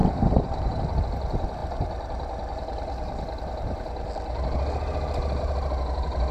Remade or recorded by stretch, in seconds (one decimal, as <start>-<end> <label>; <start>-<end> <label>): 0.0-1.0 remade; 1.0-6.3 recorded